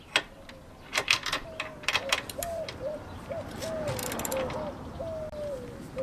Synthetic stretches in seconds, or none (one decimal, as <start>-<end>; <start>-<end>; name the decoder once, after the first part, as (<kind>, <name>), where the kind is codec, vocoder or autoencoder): 0.9-4.5 (vocoder, BigVGAN v2)